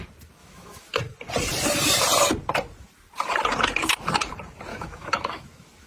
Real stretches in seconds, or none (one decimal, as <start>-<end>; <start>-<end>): 0.0-0.4; 1.0-4.7